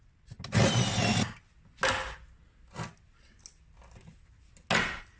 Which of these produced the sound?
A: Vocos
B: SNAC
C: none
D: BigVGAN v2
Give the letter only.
C